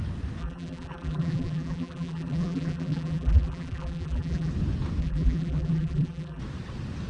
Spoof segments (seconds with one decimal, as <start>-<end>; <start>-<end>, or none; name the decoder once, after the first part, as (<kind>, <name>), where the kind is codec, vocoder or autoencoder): 0.4-4.5 (vocoder, BigVGAN v2); 5.0-6.4

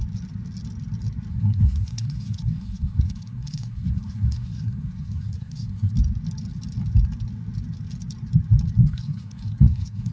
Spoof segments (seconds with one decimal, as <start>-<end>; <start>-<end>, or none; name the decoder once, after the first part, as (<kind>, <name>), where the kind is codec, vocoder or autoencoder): 1.3-5.9 (codec, SNAC); 8.8-10.1

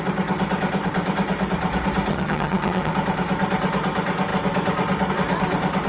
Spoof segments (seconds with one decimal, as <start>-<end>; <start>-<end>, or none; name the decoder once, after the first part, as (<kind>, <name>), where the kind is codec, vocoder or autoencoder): 2.1-2.9 (vocoder, HiFi-GAN)

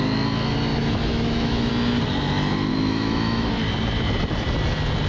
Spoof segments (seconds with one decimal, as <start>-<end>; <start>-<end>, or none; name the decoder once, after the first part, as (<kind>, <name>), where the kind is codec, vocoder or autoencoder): 0.7-1.7 (autoencoder, DAC-VAE); 2.7-3.5

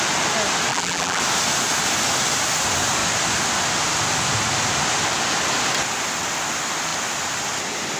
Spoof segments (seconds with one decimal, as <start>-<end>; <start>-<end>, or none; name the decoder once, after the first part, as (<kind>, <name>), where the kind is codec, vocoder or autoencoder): 0.7-1.2 (vocoder, BigVGAN v2)

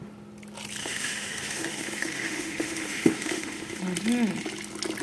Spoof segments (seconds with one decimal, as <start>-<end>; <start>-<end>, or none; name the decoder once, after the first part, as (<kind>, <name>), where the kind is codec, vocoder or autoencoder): 0.8-3.8 (autoencoder, DAC-VAE)